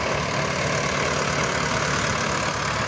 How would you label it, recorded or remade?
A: recorded